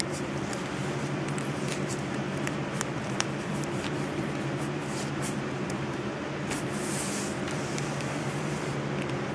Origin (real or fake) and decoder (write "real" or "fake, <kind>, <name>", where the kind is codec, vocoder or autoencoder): fake, vocoder, BigVGAN v2